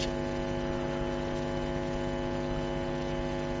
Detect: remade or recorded recorded